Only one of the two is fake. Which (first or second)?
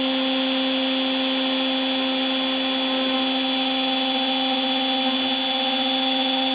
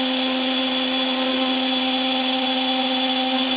second